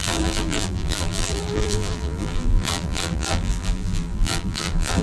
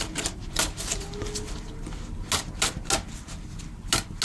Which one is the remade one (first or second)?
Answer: first